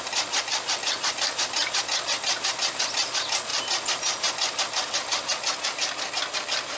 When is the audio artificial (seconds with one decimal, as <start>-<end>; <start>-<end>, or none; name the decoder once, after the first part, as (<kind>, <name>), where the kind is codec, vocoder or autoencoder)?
none